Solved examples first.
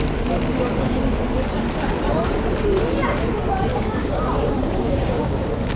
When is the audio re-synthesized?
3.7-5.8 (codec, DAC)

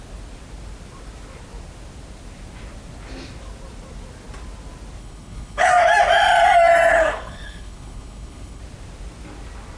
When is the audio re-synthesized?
5.0-5.7 (codec, HILCodec); 6.9-8.6